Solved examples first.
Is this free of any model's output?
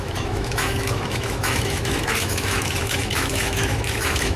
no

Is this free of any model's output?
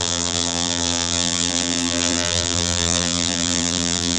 no